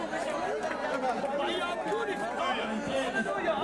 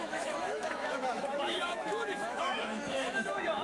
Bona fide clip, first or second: first